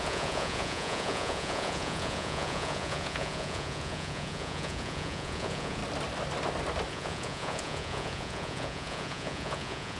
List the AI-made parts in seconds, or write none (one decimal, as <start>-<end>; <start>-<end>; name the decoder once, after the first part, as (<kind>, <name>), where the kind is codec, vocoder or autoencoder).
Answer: 0.0-5.8 (vocoder, Vocos); 6.9-10.0